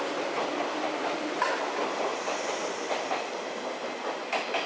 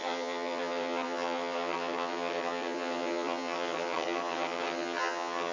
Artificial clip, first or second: second